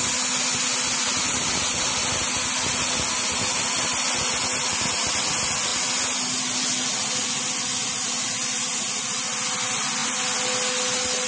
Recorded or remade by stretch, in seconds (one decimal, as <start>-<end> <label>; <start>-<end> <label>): 0.0-11.3 recorded